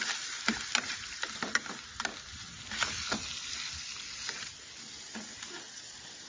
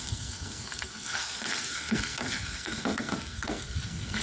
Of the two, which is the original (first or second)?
first